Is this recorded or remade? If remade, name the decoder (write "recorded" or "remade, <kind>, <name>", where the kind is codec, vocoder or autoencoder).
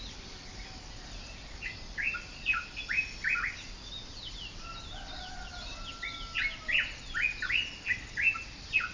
recorded